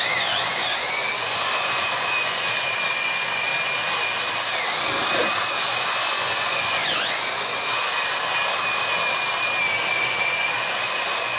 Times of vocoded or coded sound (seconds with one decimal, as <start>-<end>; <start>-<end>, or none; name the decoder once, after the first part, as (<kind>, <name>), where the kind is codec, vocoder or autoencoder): 0.0-3.5 (vocoder, Vocos); 5.5-8.2; 9.9-11.4